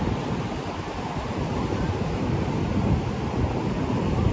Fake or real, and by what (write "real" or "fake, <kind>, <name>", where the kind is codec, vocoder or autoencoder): real